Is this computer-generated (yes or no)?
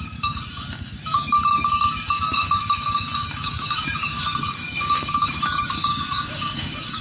yes